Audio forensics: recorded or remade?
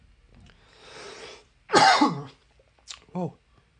recorded